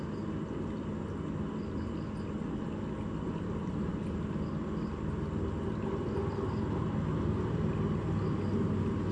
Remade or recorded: recorded